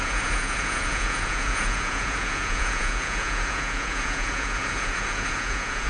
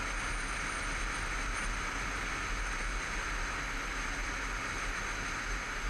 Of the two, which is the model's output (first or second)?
first